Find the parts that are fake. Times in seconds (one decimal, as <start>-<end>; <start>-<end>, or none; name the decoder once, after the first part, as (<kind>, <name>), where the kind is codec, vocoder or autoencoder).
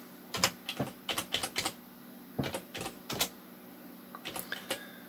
none